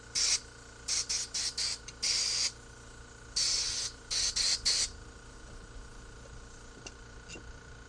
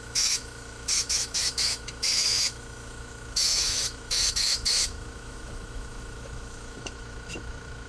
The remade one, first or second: second